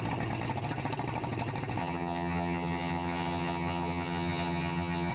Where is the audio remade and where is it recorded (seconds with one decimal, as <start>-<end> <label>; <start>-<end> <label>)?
0.0-1.8 recorded; 1.8-5.1 remade